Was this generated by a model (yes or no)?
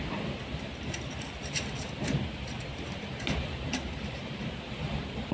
yes